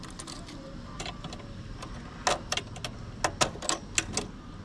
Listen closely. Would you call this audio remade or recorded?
recorded